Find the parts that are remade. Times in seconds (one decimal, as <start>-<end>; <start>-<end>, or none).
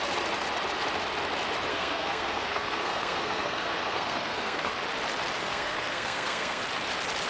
1.7-4.7; 5.4-6.6